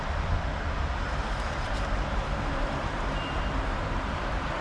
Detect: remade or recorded remade